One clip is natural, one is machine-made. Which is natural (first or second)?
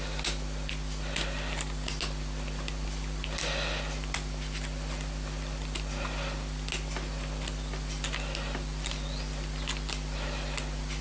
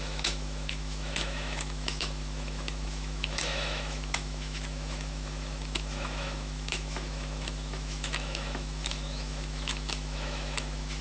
first